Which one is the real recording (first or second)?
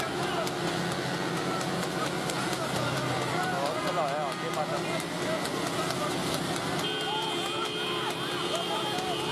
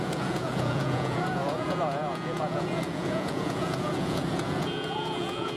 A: first